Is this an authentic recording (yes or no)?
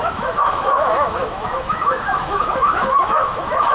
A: no